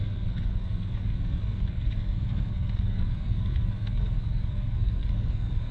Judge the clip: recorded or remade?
remade